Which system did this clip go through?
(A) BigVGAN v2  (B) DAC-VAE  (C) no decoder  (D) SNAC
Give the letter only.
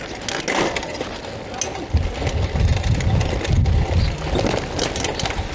C